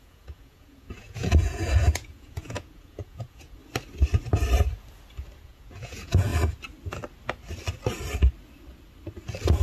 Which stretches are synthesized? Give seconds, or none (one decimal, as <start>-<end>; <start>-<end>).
0.0-3.6; 5.4-6.3